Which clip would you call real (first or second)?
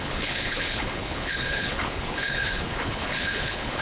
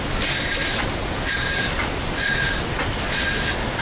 second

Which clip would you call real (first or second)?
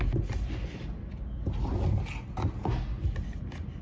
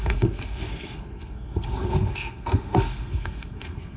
first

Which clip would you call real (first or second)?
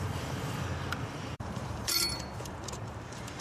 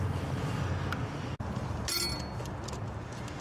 second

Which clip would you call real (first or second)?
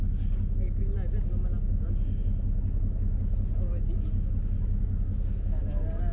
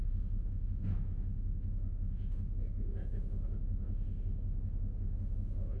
first